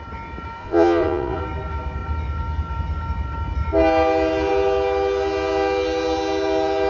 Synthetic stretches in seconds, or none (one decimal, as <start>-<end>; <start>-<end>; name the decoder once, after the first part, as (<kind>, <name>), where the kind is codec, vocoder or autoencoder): 0.6-1.4 (vocoder, Vocos)